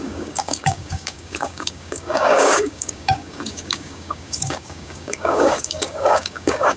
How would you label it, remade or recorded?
remade